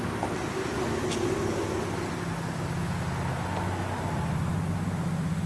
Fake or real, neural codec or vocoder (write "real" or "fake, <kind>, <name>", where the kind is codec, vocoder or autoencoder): real